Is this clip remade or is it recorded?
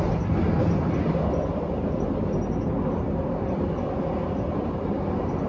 recorded